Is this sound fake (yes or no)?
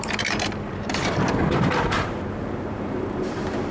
yes